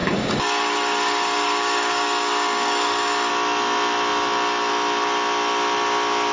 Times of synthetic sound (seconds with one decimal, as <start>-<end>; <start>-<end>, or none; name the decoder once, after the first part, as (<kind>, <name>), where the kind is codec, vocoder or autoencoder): 0.0-3.3 (codec, DAC)